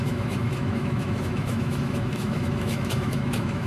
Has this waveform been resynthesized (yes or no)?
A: yes